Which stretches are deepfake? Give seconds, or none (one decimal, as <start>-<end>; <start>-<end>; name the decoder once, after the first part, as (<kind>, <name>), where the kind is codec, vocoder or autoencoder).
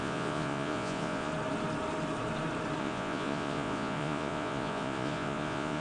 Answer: 0.0-1.3 (vocoder, Vocos); 2.8-5.8